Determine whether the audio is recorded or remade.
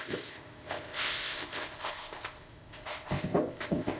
remade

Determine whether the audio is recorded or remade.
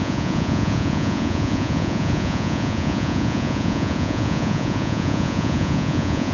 remade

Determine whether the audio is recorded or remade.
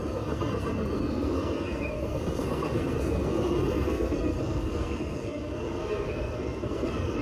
remade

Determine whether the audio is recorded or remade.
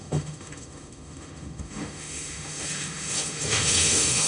remade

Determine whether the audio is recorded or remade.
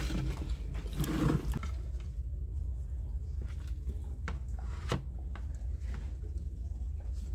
recorded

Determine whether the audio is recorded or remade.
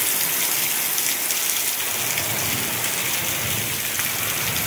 recorded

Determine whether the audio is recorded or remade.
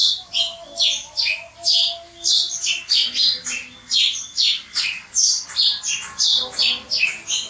recorded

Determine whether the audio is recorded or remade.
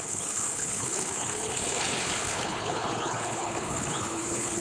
remade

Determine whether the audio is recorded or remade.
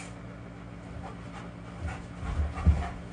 recorded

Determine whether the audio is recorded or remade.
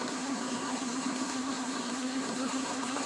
remade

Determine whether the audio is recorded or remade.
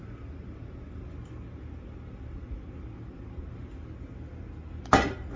recorded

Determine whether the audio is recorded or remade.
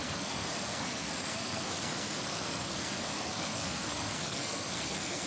remade